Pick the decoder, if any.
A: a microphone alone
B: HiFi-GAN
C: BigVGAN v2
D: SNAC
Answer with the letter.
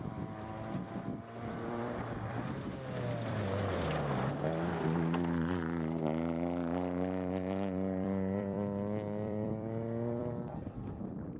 C